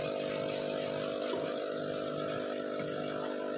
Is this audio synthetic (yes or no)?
no